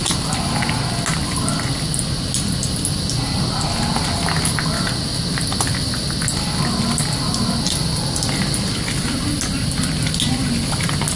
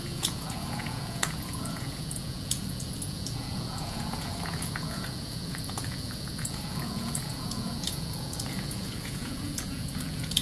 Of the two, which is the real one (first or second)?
first